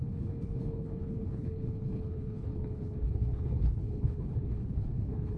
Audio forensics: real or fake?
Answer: fake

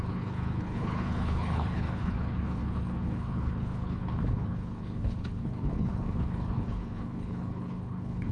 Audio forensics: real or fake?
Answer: fake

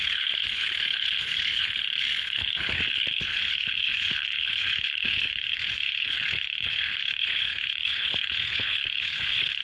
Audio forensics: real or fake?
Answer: fake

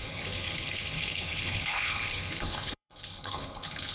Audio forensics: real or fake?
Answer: fake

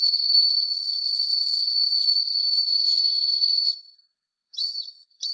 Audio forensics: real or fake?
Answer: fake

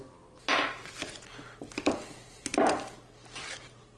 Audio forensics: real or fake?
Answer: real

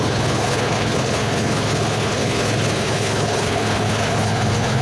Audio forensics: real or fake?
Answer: fake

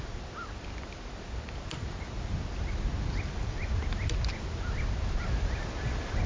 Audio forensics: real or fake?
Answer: real